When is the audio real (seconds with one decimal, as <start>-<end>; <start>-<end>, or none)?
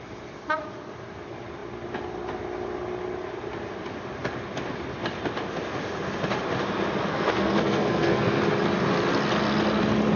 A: 0.0-7.1; 8.4-10.2